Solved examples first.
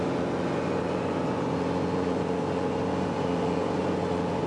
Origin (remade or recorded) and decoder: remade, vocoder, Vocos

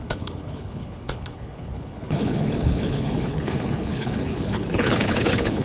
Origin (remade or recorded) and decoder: remade, codec, HILCodec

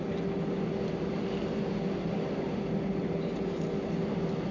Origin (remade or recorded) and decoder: recorded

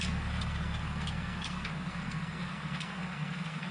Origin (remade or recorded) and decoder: remade, codec, SNAC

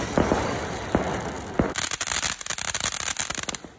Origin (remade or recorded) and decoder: recorded